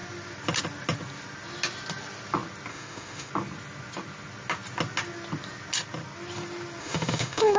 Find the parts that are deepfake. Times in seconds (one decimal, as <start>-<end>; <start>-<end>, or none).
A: 2.7-3.3; 6.8-7.6